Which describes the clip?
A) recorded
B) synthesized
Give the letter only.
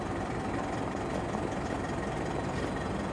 A